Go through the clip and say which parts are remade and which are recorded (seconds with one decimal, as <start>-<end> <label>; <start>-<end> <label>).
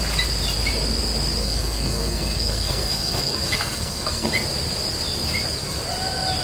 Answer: 0.0-1.4 recorded; 1.4-4.3 remade; 4.3-6.4 recorded